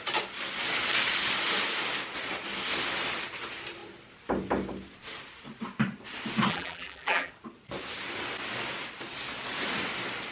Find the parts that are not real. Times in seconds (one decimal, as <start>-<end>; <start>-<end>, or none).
6.5-7.3